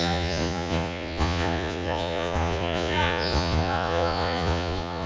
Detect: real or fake fake